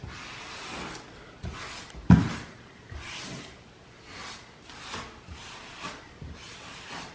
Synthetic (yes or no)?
no